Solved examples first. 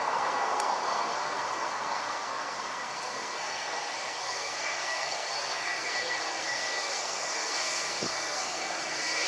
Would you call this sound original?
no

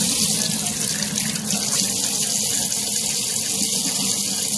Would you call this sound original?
yes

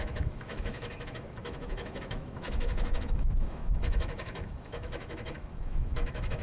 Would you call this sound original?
no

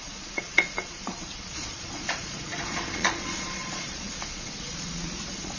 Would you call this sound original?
no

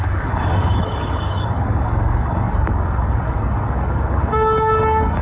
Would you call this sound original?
no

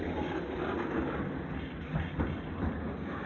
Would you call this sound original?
yes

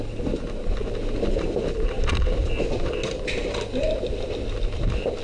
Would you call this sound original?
yes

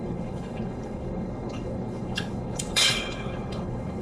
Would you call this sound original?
no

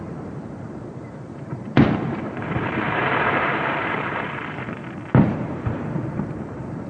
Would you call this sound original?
no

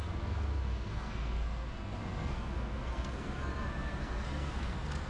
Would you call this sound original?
no